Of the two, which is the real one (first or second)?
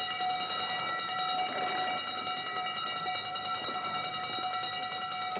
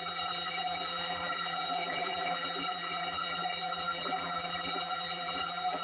first